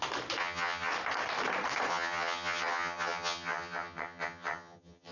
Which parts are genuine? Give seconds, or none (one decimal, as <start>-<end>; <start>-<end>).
0.0-0.4; 0.9-1.9